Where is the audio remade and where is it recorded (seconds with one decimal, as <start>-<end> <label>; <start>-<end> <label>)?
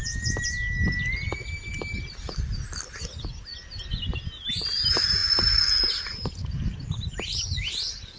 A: 0.0-8.2 recorded